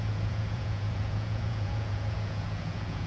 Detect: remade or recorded remade